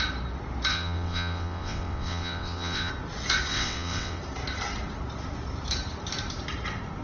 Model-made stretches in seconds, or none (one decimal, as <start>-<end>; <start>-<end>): 0.7-2.9; 3.5-4.2